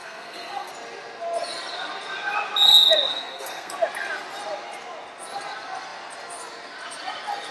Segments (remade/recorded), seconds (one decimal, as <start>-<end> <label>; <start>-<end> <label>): 0.0-0.7 remade; 0.7-3.1 recorded; 3.1-3.7 remade; 3.7-7.5 recorded

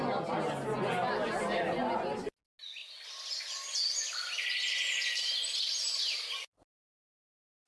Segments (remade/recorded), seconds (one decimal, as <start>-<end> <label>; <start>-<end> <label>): 0.0-7.7 recorded

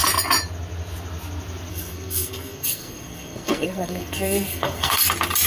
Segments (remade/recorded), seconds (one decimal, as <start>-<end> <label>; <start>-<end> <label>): 0.0-1.7 recorded; 1.7-5.0 remade; 5.0-5.5 recorded

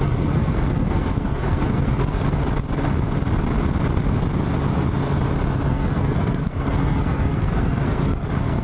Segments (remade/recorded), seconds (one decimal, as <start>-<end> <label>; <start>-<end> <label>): 0.0-2.4 remade; 2.4-5.7 recorded; 5.7-8.6 remade

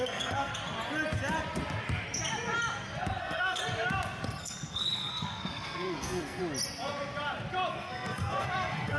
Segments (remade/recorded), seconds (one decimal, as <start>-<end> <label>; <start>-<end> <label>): 0.0-0.5 remade; 0.5-3.2 recorded; 3.2-3.6 remade; 3.6-4.4 recorded; 4.4-6.4 remade; 6.4-7.7 recorded; 7.7-9.0 remade

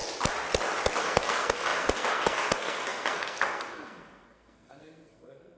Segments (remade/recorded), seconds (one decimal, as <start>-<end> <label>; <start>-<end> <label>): 0.0-1.0 recorded; 1.0-5.6 remade

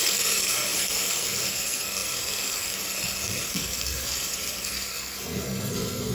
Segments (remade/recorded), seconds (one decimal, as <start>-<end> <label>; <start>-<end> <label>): 0.0-6.1 remade

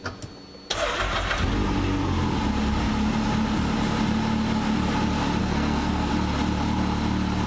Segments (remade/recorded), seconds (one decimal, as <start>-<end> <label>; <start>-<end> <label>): 0.0-5.4 recorded; 5.4-6.1 remade; 6.1-7.5 recorded